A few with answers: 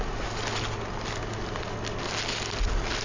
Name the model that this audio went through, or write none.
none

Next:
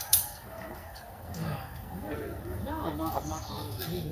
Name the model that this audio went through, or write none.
codec, SNAC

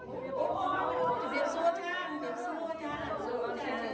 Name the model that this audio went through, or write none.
none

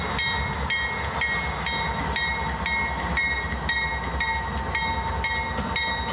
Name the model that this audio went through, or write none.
none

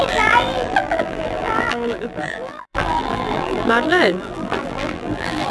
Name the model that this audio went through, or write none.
vocoder, BigVGAN v2